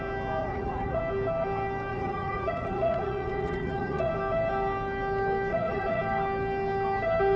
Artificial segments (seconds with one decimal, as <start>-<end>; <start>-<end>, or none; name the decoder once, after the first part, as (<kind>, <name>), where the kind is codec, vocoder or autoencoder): 0.4-1.0 (vocoder, Vocos); 1.9-4.1; 5.5-6.0